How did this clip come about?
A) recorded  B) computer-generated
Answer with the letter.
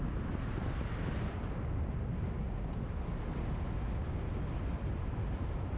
A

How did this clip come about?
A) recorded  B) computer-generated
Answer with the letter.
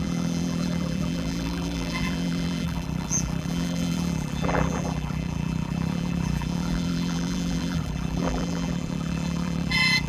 B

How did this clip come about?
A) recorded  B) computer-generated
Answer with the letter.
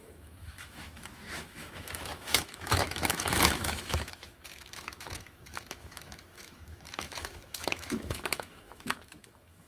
B